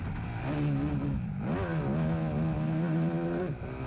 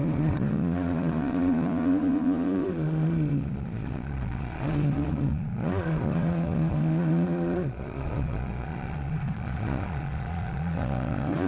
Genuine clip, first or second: first